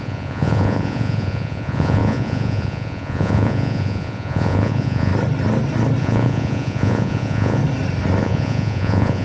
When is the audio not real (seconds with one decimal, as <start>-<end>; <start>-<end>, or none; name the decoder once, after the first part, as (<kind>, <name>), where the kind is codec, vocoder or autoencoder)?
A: 0.0-5.1 (vocoder, Vocos); 6.0-7.6; 8.2-9.2